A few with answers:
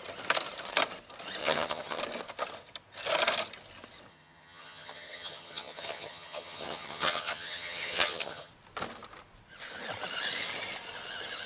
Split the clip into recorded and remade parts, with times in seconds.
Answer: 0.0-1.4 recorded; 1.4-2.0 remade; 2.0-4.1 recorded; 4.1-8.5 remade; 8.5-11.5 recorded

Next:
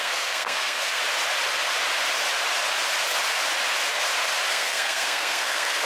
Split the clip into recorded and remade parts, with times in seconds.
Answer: 0.0-1.0 remade; 1.0-4.5 recorded; 4.5-5.9 remade

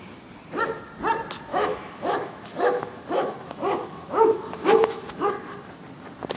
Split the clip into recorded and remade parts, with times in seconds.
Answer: 0.0-1.5 recorded; 1.5-5.3 remade; 5.3-6.4 recorded

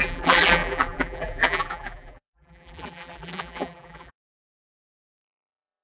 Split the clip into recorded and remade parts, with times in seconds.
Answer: 0.0-5.8 remade

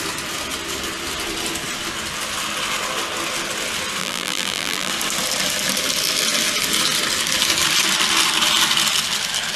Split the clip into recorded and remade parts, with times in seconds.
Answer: 0.0-4.0 recorded; 4.0-4.9 remade; 4.9-9.6 recorded

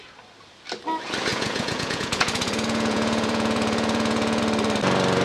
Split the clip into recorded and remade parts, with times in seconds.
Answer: 0.0-1.3 recorded; 1.3-4.4 remade; 4.4-5.2 recorded

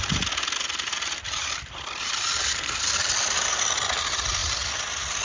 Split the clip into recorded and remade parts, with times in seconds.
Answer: 0.0-5.2 recorded

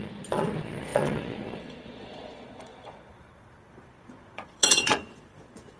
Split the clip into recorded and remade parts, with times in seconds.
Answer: 0.0-5.8 remade